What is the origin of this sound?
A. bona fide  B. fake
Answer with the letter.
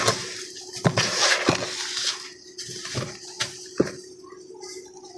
A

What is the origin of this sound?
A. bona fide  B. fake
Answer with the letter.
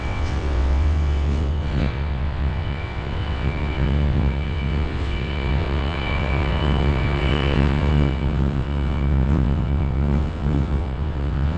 B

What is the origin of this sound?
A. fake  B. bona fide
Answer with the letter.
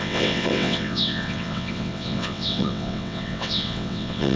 A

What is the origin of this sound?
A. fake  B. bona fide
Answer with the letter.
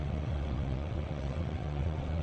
A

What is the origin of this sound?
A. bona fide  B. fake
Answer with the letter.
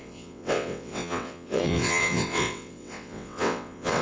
B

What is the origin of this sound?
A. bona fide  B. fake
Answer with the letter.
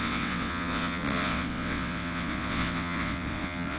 B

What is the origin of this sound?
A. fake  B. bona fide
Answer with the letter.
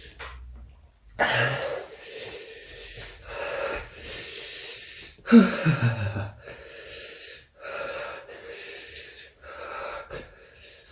B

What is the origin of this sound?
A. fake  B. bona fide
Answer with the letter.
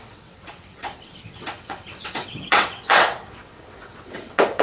A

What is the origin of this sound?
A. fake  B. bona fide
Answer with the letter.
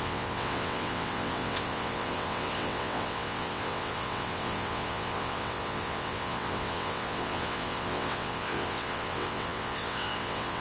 A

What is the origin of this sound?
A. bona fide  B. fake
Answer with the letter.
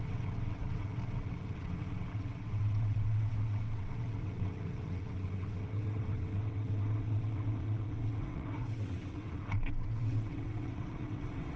B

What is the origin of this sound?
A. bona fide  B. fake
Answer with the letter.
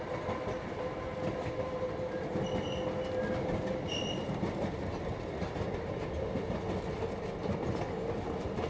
A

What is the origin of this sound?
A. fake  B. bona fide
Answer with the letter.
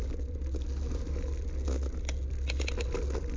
B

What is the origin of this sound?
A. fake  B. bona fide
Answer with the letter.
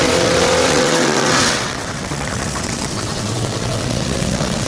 A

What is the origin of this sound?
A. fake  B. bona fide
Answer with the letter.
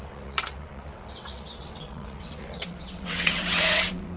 A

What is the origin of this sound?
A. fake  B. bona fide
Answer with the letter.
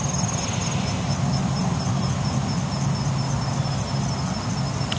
B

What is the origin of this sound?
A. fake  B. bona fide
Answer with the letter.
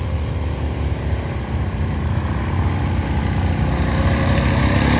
B